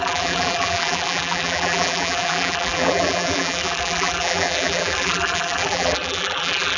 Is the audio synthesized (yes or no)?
yes